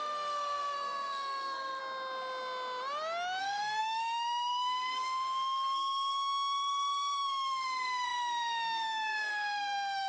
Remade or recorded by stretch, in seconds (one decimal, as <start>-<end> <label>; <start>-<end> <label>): 0.0-1.8 remade; 1.8-3.4 recorded; 3.4-10.1 remade